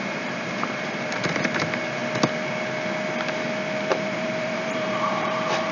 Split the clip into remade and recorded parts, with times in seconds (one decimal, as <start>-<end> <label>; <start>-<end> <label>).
0.0-2.0 remade; 2.0-3.9 recorded; 3.9-5.7 remade